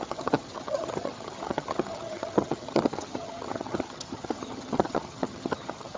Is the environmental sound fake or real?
fake